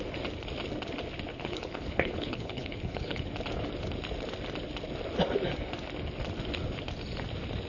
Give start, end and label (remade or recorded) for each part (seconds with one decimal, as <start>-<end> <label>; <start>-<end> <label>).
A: 0.0-1.3 recorded; 1.3-3.3 remade; 3.3-7.7 recorded